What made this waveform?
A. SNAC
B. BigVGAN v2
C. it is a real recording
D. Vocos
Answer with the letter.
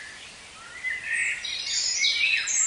C